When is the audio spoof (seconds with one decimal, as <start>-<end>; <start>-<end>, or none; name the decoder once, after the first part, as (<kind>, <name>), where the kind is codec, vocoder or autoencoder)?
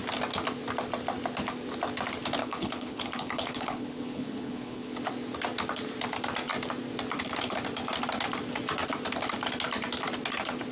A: 2.4-5.0 (codec, HILCodec)